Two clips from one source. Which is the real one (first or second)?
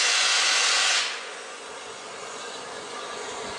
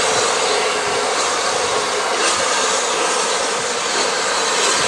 second